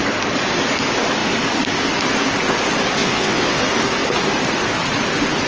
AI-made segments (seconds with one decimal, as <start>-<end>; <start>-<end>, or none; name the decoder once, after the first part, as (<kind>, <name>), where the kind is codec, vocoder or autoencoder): 3.0-3.6 (vocoder, WaveNeXt)